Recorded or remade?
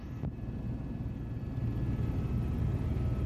recorded